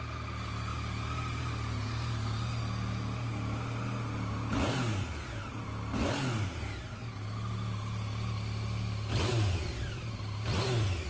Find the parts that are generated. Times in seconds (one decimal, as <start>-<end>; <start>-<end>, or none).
none